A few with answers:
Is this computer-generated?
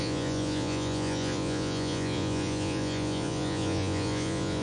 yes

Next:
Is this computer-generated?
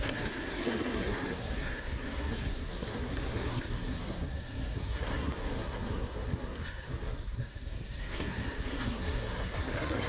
yes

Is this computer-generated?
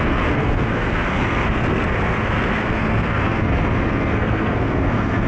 yes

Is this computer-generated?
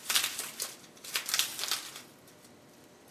no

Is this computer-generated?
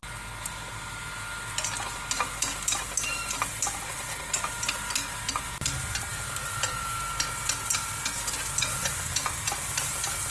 no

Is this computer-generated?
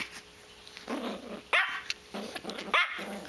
no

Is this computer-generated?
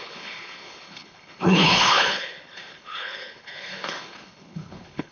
yes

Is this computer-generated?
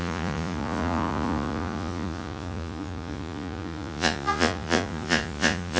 yes